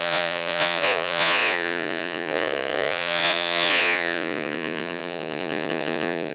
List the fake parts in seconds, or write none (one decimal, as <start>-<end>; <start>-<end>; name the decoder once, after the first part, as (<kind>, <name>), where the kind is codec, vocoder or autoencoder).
0.0-6.3 (vocoder, Vocos)